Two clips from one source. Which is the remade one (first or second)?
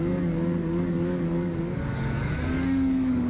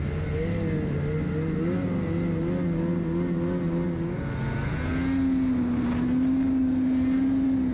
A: first